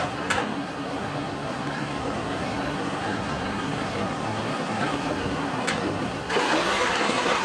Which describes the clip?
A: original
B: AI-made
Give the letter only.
B